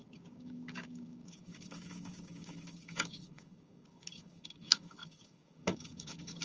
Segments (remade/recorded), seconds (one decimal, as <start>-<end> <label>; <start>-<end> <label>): 0.0-6.4 remade